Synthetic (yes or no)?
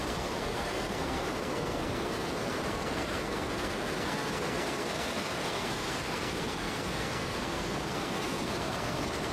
yes